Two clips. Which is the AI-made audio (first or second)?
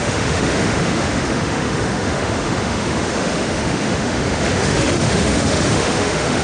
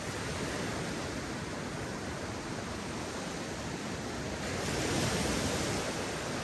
first